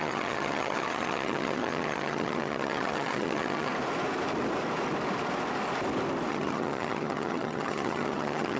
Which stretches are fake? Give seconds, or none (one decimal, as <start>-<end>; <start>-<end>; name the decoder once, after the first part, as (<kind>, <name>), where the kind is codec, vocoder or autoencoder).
0.0-3.7 (vocoder, HiFi-GAN); 6.3-8.6